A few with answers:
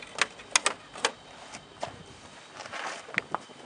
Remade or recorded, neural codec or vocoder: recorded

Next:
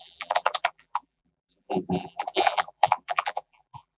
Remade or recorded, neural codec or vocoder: remade, vocoder, BigVGAN v2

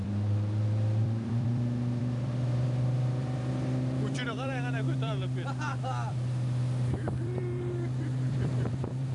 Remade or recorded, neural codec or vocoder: remade, vocoder, BigVGAN v2